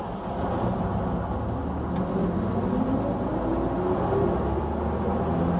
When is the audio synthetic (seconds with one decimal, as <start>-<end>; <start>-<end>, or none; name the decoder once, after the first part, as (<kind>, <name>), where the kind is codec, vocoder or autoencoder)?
none

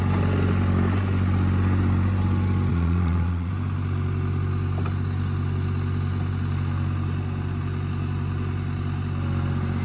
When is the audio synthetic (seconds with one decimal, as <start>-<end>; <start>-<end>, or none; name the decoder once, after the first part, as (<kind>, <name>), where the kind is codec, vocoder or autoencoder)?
2.7-3.5 (vocoder, Vocos)

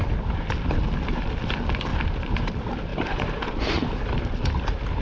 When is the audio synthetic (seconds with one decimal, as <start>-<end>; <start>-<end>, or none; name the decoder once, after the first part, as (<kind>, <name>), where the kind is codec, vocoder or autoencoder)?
1.9-2.5 (vocoder, BigVGAN v2); 2.9-4.0

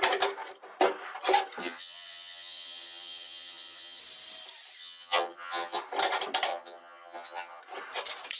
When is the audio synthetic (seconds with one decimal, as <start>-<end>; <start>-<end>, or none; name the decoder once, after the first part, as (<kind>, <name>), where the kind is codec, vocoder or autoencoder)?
1.6-4.0 (vocoder, HiFi-GAN); 4.8-5.8; 6.5-7.6

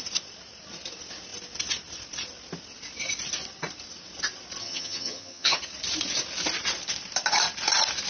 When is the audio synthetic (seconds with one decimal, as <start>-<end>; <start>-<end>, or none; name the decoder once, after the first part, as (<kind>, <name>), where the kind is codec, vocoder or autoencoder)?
4.6-5.6 (vocoder, HiFi-GAN)